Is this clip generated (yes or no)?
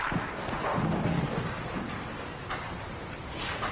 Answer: no